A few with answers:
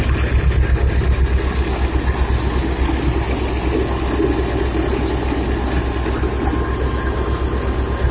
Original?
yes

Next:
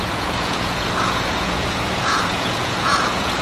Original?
no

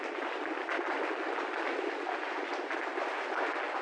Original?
no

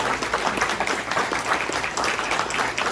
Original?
yes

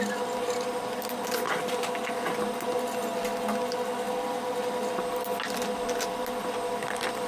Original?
yes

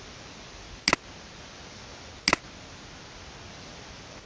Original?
yes